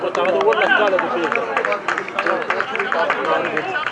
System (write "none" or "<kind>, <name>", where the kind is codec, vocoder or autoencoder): none